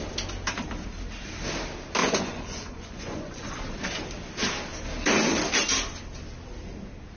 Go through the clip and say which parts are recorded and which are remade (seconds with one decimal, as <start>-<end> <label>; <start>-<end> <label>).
0.0-2.0 recorded; 2.0-3.5 remade; 3.5-7.2 recorded